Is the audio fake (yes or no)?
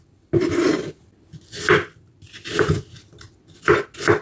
no